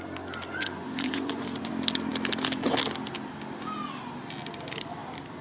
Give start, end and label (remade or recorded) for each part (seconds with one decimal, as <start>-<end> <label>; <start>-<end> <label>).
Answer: 0.0-0.6 recorded; 0.6-1.7 remade; 1.7-5.4 recorded